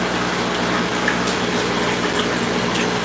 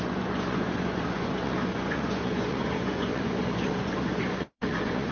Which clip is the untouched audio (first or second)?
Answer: first